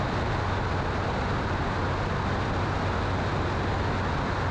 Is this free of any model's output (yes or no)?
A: yes